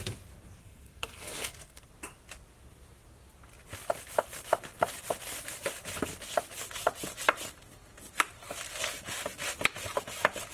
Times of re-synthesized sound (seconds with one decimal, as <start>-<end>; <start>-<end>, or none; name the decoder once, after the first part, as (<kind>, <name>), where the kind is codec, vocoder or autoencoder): 0.6-1.9 (codec, SNAC)

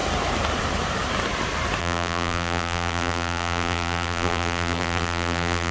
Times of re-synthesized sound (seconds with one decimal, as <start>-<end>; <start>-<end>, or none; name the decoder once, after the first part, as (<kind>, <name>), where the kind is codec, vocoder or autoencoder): 1.8-5.7 (vocoder, BigVGAN v2)

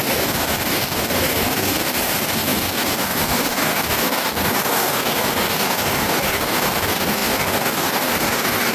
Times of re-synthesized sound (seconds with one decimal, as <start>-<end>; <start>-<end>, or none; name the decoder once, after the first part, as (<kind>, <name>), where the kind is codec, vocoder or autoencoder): 0.0-8.7 (codec, DAC)

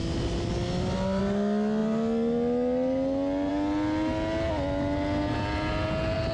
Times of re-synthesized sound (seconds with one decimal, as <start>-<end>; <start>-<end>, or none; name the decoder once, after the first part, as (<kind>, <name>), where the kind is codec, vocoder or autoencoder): none

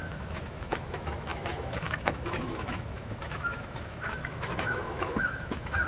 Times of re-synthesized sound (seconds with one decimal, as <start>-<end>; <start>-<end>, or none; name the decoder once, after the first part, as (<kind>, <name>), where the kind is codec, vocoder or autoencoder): 0.0-5.9 (autoencoder, DAC-VAE)

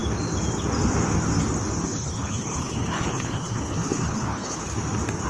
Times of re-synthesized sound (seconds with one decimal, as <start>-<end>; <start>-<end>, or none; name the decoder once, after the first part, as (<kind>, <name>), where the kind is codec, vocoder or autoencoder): 1.8-4.6 (codec, HILCodec)

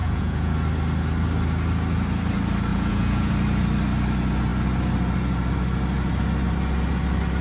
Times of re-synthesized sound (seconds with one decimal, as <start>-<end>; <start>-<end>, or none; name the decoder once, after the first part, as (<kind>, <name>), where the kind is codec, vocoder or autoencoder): 0.0-0.5 (vocoder, Vocos); 2.7-3.3